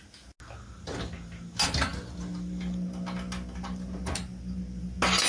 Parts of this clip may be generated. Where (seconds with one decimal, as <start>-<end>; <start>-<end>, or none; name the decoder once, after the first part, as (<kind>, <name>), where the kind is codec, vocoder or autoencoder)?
none

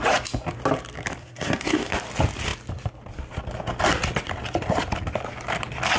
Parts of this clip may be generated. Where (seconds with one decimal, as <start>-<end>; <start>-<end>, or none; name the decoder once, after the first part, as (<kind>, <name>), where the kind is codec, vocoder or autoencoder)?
1.2-1.9 (codec, SNAC)

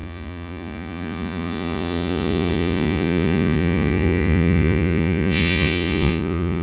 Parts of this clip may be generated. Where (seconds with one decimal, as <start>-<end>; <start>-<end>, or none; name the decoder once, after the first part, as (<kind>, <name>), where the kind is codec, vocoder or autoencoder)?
0.0-6.6 (vocoder, Vocos)

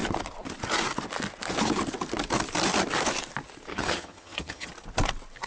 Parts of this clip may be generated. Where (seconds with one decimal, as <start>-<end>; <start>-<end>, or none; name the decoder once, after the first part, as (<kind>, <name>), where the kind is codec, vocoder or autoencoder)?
3.7-4.7 (vocoder, HiFi-GAN)

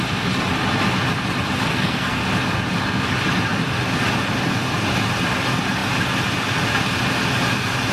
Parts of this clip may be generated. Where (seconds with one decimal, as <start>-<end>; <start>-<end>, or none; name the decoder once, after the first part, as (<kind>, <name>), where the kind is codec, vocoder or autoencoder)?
1.7-2.2 (codec, SNAC)

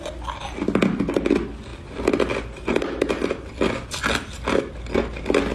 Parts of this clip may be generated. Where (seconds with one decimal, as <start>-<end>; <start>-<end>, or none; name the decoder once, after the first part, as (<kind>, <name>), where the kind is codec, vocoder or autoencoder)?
none